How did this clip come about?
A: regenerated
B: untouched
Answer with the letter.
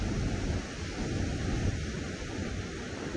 B